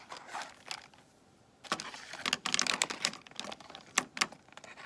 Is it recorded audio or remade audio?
recorded